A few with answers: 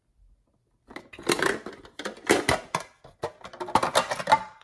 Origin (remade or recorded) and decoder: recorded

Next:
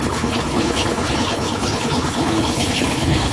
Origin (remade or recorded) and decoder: remade, codec, HILCodec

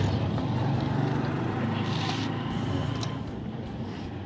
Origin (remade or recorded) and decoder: recorded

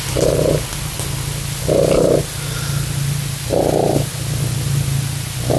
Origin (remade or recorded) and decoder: recorded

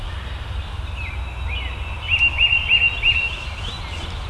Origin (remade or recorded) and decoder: recorded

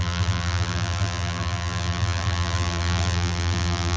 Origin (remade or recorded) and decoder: remade, vocoder, BigVGAN v2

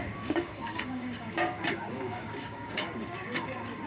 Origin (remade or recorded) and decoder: remade, codec, DAC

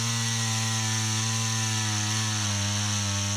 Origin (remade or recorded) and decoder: recorded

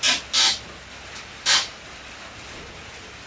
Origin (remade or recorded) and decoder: recorded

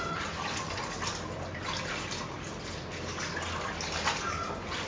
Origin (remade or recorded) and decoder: recorded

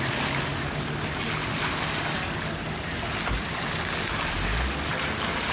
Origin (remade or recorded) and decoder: recorded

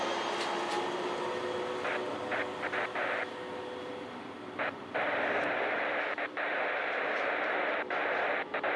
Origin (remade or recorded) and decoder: recorded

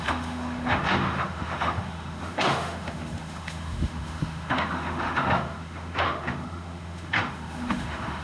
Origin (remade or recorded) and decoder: remade, autoencoder, DAC-VAE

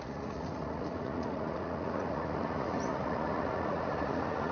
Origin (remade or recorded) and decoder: remade, vocoder, Vocos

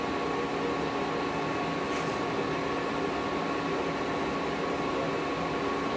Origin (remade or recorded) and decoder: recorded